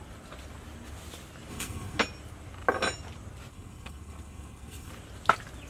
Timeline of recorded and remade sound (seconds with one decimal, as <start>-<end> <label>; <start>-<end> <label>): 0.0-1.5 recorded; 1.5-2.0 remade; 2.0-3.5 recorded; 3.5-4.9 remade; 4.9-5.7 recorded